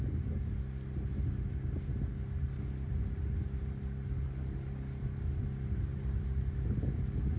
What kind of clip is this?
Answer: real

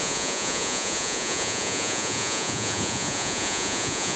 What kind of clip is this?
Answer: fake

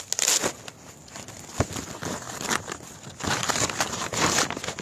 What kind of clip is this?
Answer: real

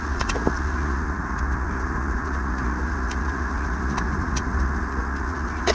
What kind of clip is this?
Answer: fake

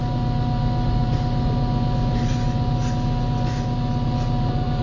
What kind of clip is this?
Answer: real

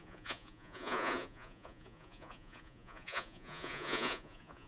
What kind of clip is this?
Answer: fake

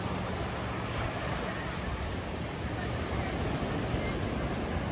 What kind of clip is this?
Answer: real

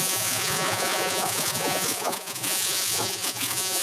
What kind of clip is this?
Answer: fake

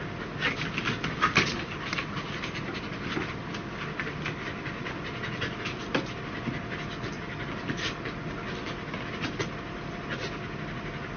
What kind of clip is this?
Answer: real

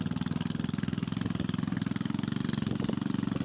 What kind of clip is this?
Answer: real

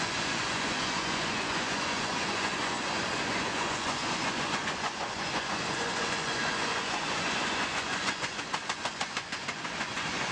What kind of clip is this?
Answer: fake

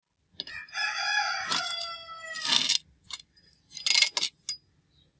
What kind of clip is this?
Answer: real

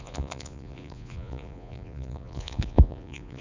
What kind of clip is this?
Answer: fake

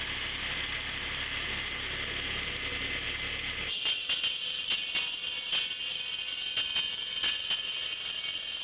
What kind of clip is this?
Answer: real